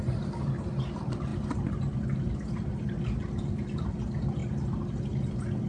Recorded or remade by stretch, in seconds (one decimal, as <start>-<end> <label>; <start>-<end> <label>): 0.0-5.7 recorded